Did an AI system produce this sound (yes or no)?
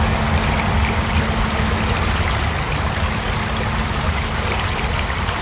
no